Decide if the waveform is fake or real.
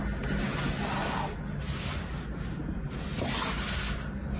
real